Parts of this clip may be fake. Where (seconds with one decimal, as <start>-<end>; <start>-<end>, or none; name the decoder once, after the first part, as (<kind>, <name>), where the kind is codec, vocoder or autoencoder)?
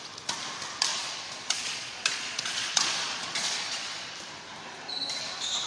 0.9-4.1 (vocoder, Vocos)